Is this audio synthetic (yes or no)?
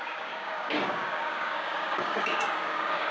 yes